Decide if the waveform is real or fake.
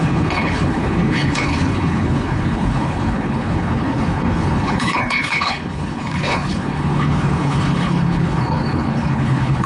fake